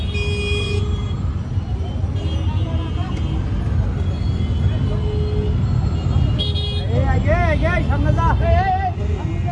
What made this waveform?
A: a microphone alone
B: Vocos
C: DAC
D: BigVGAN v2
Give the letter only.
A